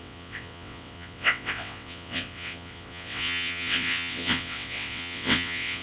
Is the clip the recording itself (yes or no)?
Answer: no